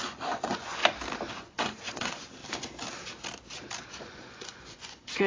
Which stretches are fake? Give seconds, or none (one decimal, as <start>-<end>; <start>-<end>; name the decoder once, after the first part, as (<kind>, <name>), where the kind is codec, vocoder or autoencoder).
0.0-0.8 (vocoder, Vocos); 1.3-2.4; 3.9-5.3